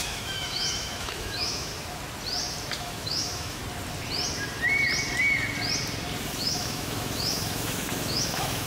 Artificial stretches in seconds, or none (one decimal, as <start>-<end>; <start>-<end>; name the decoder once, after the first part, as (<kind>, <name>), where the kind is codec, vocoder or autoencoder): 0.0-1.7 (autoencoder, DAC-VAE); 2.8-3.6; 6.3-8.7